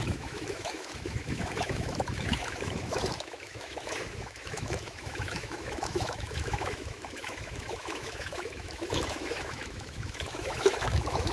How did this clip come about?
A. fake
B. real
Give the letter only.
A